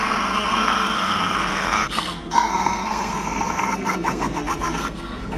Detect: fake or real fake